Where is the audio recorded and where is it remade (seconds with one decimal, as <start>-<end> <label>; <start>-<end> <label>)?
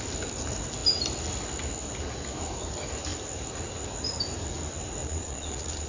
0.0-5.0 recorded; 5.0-5.9 remade